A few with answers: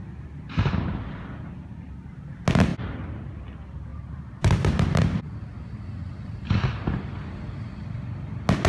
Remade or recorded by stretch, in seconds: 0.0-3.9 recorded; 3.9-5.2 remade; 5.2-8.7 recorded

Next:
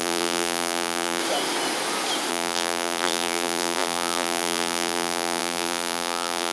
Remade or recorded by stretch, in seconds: 0.0-1.2 remade; 1.2-2.3 recorded; 2.3-6.5 remade

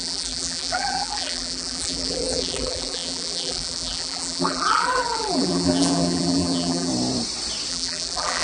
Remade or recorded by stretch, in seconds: 0.0-6.9 remade; 6.9-7.7 recorded; 7.7-8.4 remade

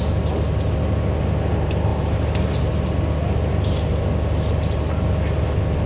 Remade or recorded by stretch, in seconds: 0.0-1.9 recorded; 1.9-5.4 remade; 5.4-5.9 recorded

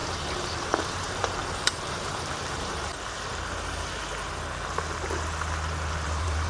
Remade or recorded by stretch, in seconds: 0.0-2.9 remade; 2.9-5.9 recorded; 5.9-6.5 remade

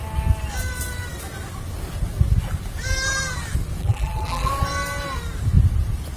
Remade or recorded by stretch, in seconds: 0.0-3.8 recorded; 3.8-4.5 remade; 4.5-6.2 recorded

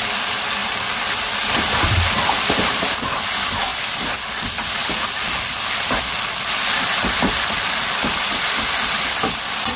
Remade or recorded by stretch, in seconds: 0.0-0.6 recorded; 0.6-2.3 remade; 2.3-9.8 recorded